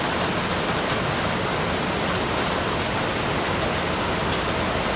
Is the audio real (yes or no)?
yes